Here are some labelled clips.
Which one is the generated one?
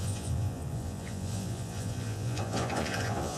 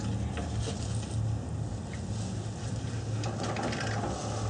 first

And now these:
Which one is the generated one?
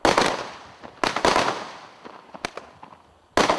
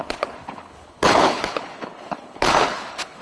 second